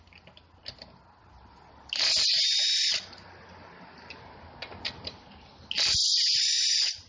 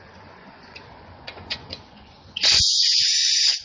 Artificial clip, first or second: second